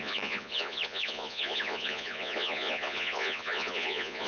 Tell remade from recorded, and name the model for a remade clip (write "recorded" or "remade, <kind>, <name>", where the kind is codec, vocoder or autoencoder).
remade, vocoder, Vocos